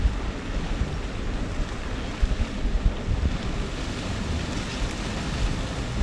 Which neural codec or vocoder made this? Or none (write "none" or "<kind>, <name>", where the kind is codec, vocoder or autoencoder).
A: none